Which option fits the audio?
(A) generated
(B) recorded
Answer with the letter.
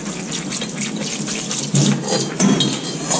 B